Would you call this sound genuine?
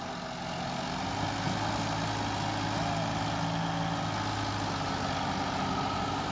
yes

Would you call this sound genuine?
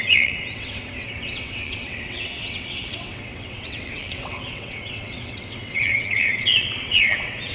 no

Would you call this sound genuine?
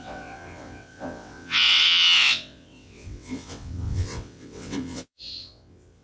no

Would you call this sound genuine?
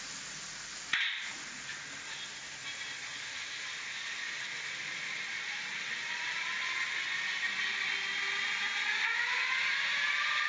yes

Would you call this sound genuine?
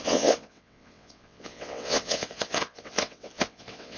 no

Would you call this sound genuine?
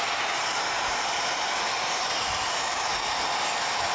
yes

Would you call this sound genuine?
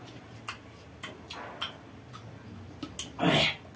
yes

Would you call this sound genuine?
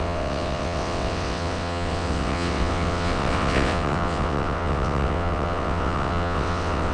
no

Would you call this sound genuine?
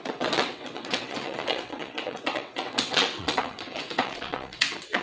no